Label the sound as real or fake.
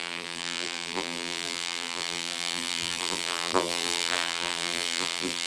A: fake